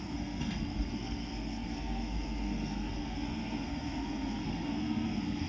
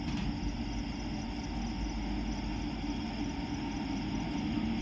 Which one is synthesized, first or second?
first